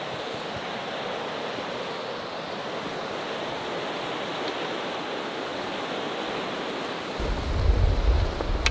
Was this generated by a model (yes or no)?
no